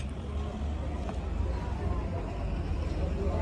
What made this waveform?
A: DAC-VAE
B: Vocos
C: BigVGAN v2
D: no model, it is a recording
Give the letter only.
D